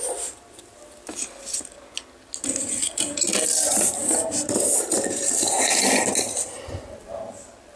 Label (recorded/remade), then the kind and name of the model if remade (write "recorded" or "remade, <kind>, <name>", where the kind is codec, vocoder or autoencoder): recorded